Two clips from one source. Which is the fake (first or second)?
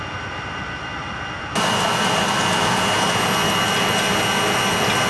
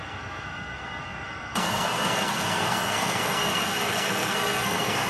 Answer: second